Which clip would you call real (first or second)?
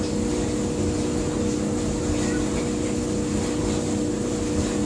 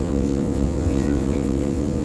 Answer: first